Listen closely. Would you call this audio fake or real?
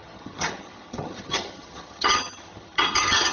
fake